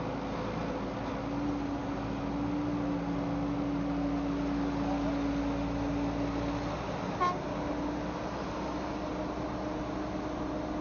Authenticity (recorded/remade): recorded